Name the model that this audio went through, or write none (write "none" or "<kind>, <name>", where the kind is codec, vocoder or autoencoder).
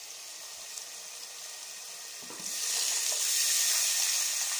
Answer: none